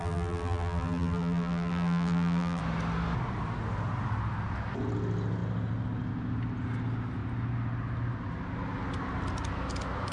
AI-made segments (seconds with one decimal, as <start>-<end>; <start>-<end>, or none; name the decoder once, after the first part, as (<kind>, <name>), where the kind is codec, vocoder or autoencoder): 0.0-2.6 (vocoder, BigVGAN v2)

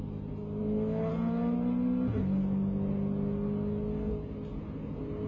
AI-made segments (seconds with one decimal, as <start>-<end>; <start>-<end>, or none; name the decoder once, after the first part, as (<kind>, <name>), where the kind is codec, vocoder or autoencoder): 0.6-1.1 (autoencoder, DAC-VAE)

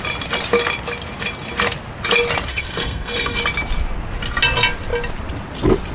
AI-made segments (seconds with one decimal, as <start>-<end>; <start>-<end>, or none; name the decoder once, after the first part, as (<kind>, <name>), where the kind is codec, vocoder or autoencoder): 2.5-3.4 (codec, SNAC)

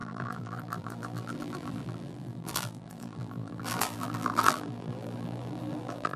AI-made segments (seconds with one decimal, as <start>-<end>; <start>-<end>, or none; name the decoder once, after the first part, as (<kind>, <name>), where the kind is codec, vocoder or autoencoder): 0.0-6.2 (vocoder, BigVGAN v2)

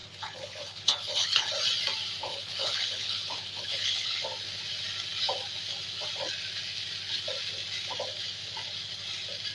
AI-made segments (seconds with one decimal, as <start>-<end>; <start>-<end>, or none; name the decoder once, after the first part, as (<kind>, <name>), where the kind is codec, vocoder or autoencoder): 0.0-1.5 (codec, HILCodec); 2.2-4.2